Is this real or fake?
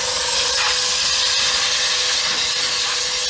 real